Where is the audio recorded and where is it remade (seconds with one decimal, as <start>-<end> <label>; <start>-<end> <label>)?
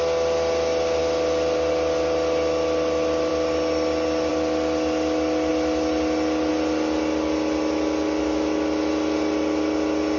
0.0-10.2 recorded